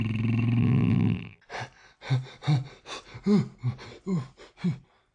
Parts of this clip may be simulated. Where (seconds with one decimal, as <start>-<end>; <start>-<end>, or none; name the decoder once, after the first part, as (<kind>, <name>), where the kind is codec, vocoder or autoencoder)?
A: 0.6-1.4 (vocoder, BigVGAN v2)